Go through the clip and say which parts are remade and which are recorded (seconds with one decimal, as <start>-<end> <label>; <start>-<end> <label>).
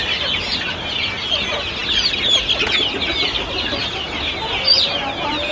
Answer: 0.0-5.5 recorded